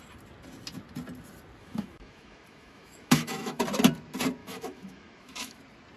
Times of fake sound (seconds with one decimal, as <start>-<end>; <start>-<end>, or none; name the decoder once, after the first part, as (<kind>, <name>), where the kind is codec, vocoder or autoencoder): 1.6-3.6 (autoencoder, DAC-VAE); 4.4-5.6